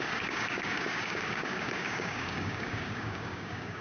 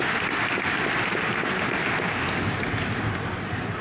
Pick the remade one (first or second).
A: first